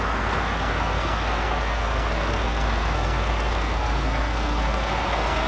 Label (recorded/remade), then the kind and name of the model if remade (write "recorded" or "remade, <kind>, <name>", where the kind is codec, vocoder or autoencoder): remade, codec, SNAC